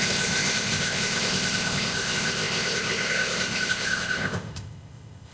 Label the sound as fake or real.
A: fake